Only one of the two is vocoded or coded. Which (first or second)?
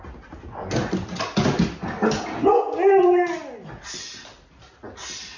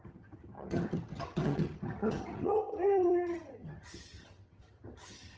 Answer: second